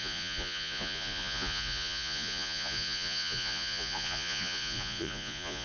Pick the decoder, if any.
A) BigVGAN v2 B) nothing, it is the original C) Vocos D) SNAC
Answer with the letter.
C